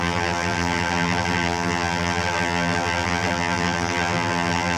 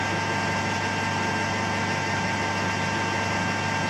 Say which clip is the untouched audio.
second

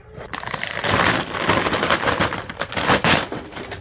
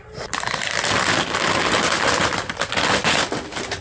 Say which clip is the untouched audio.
second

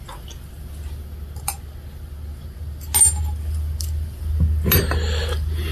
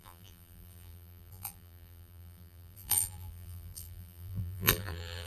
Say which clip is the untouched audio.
first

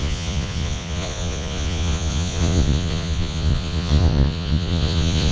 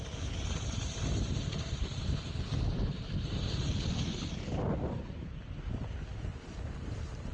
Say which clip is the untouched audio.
second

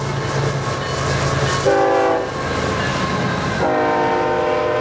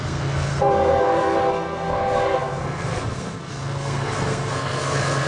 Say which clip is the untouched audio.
first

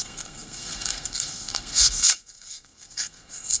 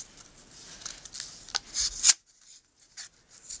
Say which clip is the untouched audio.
second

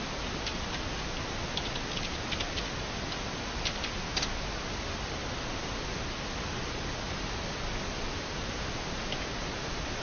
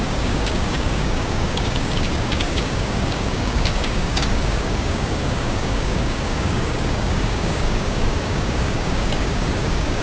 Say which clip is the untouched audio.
first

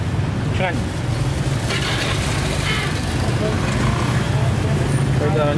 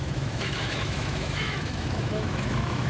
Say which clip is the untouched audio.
first